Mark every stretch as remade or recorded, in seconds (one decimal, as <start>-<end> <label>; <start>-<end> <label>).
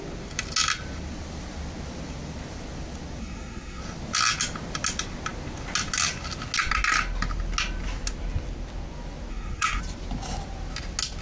0.0-3.2 recorded; 3.2-3.8 remade; 3.8-9.3 recorded; 9.3-9.8 remade; 9.8-11.2 recorded